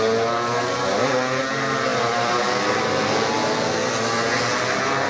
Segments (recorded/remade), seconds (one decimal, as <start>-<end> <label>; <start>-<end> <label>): 0.0-1.9 recorded; 1.9-2.7 remade; 2.7-5.1 recorded

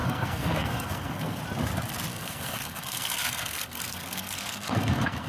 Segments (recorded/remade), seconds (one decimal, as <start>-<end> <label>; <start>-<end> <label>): 0.0-1.4 remade; 1.4-2.1 recorded; 2.1-5.3 remade

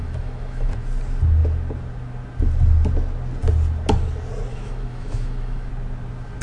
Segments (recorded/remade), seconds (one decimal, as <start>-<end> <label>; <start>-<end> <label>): 0.0-0.7 remade; 0.7-4.5 recorded; 4.5-5.7 remade; 5.7-6.4 recorded

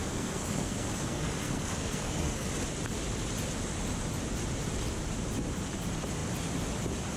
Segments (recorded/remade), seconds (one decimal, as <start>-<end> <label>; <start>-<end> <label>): 0.0-2.5 remade; 2.5-7.2 recorded

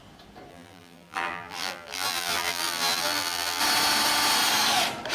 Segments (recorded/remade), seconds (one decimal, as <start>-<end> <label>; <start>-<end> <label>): 0.0-0.5 recorded; 0.5-3.6 remade; 3.6-5.1 recorded

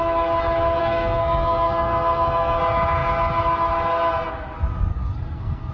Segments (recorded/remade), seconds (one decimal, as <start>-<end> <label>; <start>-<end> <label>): 0.0-0.8 recorded; 0.8-2.6 remade; 2.6-4.9 recorded; 4.9-5.7 remade

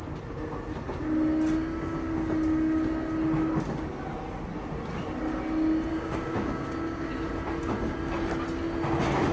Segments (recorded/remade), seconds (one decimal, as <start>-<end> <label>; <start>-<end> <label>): 0.0-5.9 recorded; 5.9-7.1 remade; 7.1-9.3 recorded

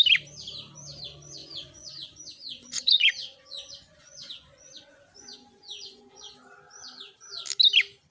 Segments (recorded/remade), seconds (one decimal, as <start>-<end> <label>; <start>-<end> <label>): 0.0-1.4 recorded; 1.4-6.3 remade; 6.3-8.1 recorded